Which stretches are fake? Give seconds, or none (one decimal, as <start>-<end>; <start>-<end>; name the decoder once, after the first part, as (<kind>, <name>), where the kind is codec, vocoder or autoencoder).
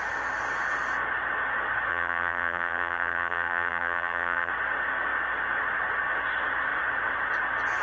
1.9-4.5 (vocoder, BigVGAN v2)